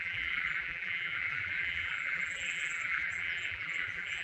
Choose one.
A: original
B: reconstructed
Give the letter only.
B